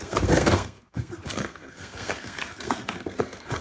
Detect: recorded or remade remade